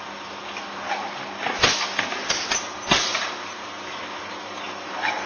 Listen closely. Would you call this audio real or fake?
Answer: real